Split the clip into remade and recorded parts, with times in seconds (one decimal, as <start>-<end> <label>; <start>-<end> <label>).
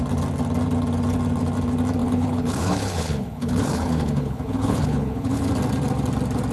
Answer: 0.0-2.0 recorded; 2.0-5.5 remade; 5.5-6.5 recorded